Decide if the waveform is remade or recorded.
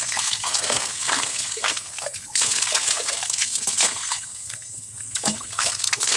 remade